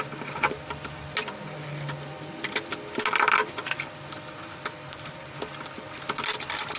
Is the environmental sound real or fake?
real